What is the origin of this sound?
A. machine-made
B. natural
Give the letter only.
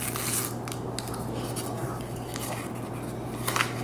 B